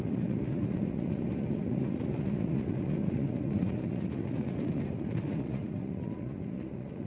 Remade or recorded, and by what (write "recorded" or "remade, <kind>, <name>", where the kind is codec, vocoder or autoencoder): remade, vocoder, Vocos